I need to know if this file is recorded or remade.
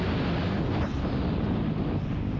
recorded